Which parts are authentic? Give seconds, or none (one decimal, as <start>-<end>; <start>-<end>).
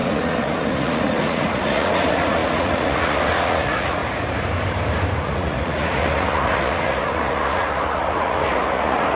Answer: 4.0-5.2